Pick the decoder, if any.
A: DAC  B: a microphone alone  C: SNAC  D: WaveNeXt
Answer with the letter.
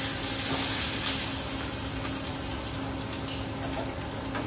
B